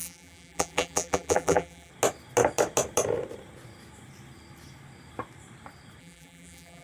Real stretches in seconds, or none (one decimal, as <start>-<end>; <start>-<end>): 1.9-6.0